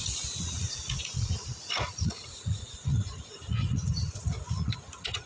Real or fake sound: fake